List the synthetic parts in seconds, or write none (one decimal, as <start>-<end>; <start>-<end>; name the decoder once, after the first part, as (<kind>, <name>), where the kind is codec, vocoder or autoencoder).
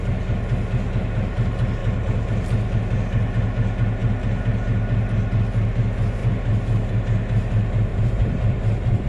1.8-2.8 (vocoder, BigVGAN v2); 7.9-9.1